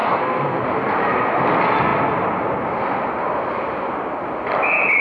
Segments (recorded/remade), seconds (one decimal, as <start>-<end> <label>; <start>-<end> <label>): 0.0-0.6 remade; 0.6-5.0 recorded